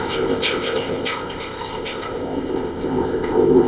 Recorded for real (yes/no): no